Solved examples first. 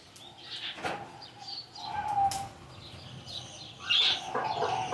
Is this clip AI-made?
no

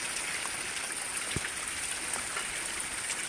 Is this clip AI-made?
no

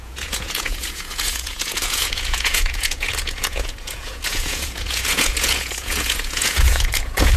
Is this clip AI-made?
yes